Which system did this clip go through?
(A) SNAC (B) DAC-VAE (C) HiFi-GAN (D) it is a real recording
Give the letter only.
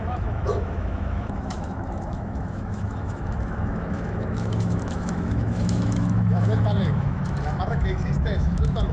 B